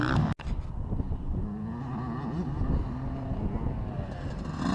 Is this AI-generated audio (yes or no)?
no